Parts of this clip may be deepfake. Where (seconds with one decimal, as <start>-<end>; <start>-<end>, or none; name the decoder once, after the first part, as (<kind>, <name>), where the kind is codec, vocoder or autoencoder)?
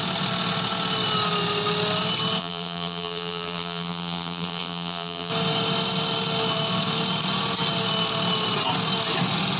2.4-5.3 (vocoder, BigVGAN v2)